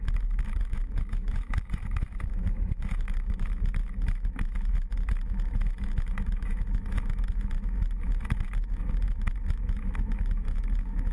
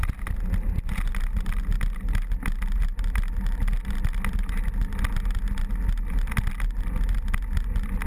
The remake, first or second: first